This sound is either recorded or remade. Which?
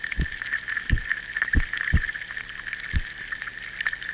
recorded